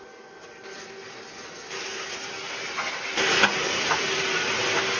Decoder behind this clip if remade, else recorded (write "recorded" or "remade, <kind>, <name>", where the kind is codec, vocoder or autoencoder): recorded